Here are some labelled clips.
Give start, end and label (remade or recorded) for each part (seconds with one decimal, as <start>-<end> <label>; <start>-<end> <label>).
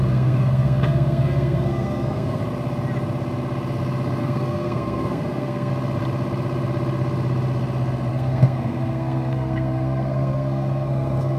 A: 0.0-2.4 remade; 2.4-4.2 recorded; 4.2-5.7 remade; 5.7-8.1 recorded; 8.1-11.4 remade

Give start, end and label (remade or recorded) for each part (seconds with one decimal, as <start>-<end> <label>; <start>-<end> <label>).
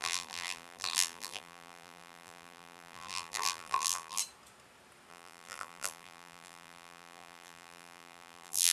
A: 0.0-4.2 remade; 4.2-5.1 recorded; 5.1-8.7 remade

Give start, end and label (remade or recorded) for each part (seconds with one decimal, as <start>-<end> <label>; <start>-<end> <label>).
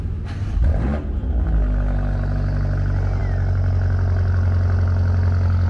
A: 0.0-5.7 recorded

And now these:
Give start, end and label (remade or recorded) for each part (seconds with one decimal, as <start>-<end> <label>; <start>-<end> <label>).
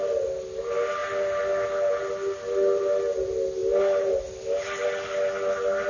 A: 0.0-5.9 recorded